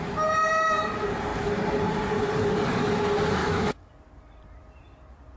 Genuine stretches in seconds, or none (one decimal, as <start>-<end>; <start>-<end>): 0.0-3.4; 3.9-5.4